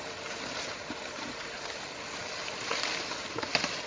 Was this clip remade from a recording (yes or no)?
no